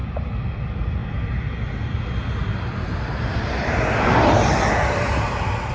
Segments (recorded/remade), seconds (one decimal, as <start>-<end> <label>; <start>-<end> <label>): 0.0-5.7 recorded